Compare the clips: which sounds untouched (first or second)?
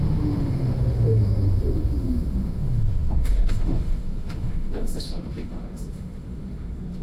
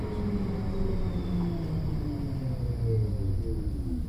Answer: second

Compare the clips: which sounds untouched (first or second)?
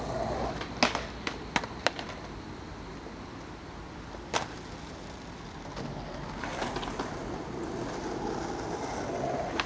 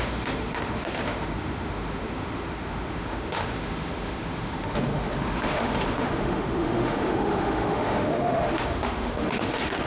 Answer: first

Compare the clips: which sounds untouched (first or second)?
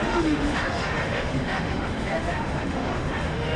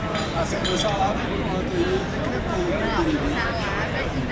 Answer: second